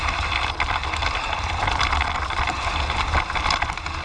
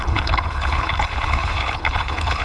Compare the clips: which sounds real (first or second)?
first